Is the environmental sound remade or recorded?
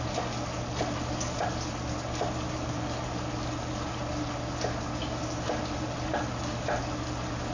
recorded